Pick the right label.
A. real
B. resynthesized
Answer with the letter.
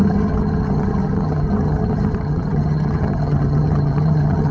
B